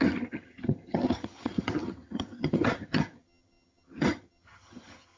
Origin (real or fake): fake